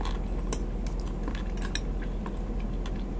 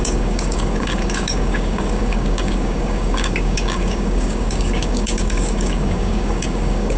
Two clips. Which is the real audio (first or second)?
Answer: first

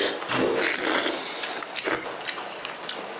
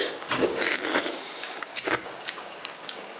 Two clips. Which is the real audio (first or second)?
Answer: first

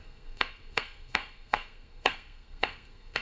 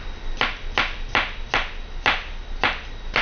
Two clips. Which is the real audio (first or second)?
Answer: second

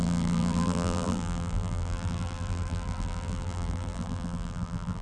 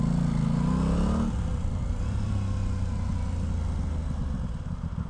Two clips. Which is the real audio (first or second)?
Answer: second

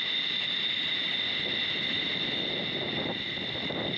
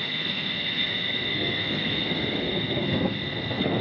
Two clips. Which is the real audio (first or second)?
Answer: first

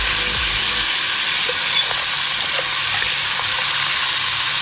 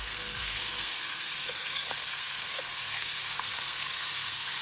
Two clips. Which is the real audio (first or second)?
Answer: first